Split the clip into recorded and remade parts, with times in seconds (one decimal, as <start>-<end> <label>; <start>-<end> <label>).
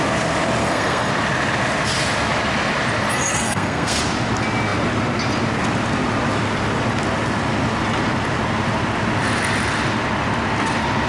0.0-0.6 recorded; 0.6-1.1 remade; 1.1-3.1 recorded; 3.1-4.0 remade; 4.0-11.1 recorded